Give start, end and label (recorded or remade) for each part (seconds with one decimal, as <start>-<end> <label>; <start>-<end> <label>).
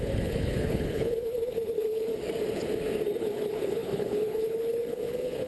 0.0-2.1 remade; 2.1-3.2 recorded; 3.2-5.5 remade